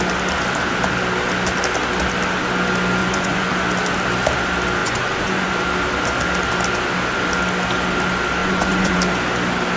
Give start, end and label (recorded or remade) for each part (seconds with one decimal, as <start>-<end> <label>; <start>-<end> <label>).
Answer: 0.0-3.0 recorded; 3.0-3.5 remade; 3.5-4.8 recorded; 4.8-5.5 remade; 5.5-8.4 recorded; 8.4-9.0 remade; 9.0-9.8 recorded